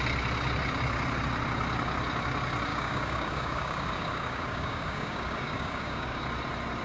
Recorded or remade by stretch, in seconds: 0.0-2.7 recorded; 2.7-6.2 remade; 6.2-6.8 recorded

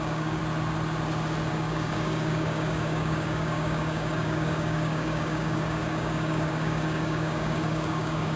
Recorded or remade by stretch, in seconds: 0.0-0.4 remade; 0.4-1.5 recorded; 1.5-8.4 remade

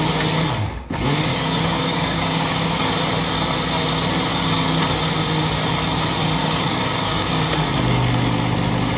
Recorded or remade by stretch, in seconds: 0.0-1.3 recorded; 1.3-2.9 remade; 2.9-4.3 recorded; 4.3-5.0 remade; 5.0-6.4 recorded; 6.4-7.5 remade; 7.5-9.0 recorded